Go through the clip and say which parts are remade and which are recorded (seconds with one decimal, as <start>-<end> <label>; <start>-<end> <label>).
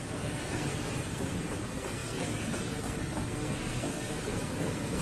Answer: 0.0-5.0 remade